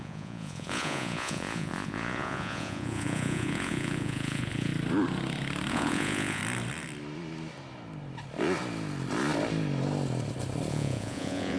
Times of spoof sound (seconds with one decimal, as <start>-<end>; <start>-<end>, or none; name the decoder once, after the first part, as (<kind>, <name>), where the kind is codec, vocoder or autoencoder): 0.0-4.7 (vocoder, Vocos); 5.7-6.4; 10.7-11.6